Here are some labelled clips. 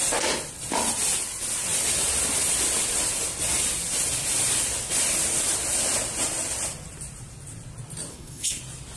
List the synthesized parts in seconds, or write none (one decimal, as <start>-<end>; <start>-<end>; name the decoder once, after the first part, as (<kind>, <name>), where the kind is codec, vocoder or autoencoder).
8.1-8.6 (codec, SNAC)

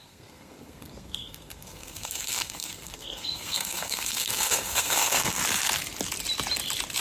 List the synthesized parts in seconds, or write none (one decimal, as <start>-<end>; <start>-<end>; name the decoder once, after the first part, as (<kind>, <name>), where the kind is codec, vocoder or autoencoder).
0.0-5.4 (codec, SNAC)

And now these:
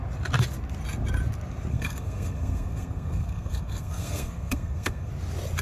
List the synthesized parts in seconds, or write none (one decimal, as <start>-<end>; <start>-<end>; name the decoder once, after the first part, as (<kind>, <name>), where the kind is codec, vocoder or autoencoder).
1.7-5.1 (codec, SNAC)